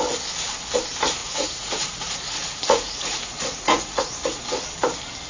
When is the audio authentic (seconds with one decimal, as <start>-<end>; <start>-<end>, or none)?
0.0-1.2; 4.4-5.3